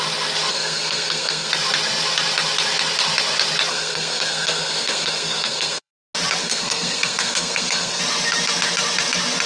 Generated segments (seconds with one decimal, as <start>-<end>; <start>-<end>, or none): 0.5-1.5; 3.7-5.9; 6.4-8.0